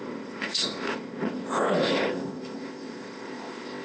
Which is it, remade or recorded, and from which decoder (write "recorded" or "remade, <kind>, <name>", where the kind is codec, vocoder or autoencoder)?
remade, codec, ZipCodec